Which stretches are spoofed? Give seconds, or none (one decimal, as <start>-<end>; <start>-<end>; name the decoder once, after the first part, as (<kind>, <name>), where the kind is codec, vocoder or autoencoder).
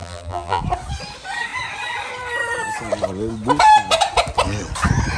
0.0-0.6 (vocoder, BigVGAN v2)